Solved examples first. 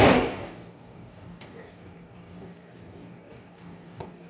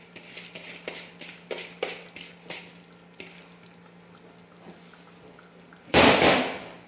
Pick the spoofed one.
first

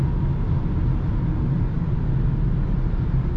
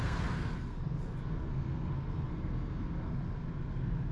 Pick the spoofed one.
second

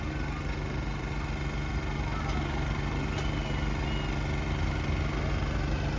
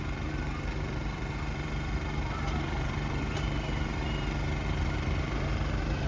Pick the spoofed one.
second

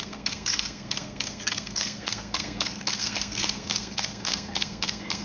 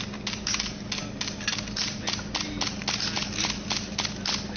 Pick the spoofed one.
first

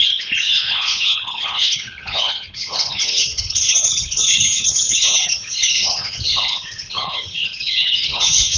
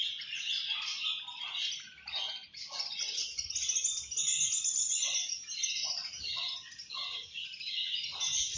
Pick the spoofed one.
first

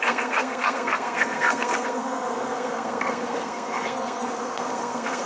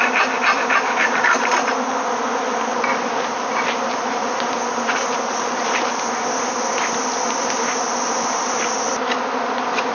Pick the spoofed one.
first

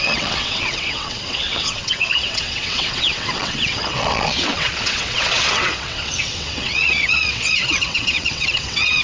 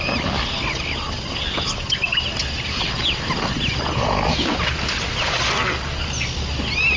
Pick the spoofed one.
first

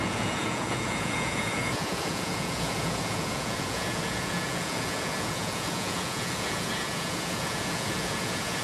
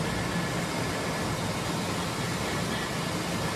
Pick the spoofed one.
first